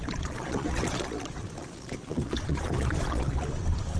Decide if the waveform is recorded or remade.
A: remade